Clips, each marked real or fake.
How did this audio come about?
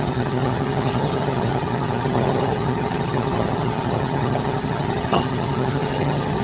fake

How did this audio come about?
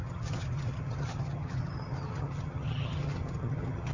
fake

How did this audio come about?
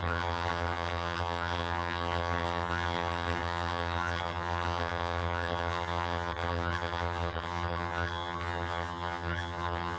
fake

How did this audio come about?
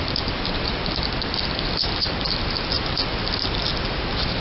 real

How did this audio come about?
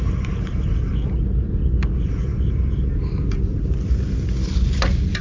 real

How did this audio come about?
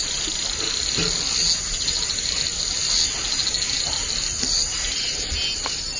real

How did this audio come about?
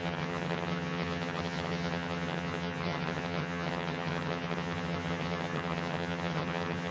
fake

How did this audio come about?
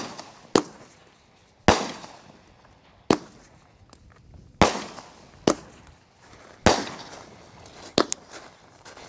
real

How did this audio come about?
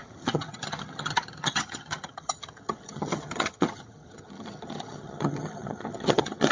fake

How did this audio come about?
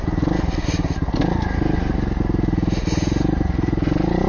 real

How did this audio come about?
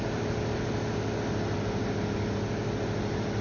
real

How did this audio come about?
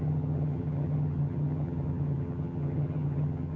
fake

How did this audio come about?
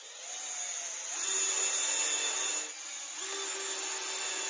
real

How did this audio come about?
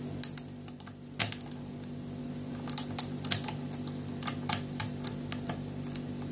real